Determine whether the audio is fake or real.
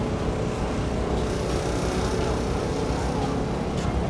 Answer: real